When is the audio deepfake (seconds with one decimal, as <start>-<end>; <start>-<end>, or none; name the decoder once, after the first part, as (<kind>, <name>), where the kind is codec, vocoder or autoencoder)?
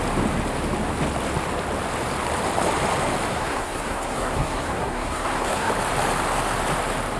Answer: 3.3-5.7 (codec, SNAC)